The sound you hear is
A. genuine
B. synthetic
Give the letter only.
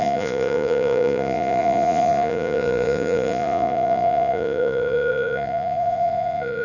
B